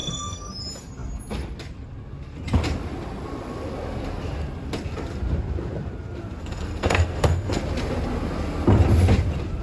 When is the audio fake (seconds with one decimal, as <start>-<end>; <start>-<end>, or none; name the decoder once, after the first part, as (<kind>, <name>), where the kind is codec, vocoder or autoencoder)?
0.0-0.5 (codec, SNAC); 6.4-7.6